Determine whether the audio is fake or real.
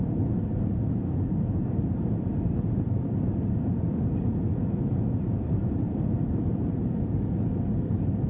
fake